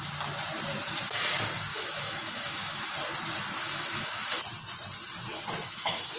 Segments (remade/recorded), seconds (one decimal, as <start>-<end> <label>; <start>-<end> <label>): 0.0-1.7 recorded; 1.7-2.9 remade; 2.9-3.6 recorded; 3.6-4.4 remade; 4.4-5.6 recorded; 5.6-6.2 remade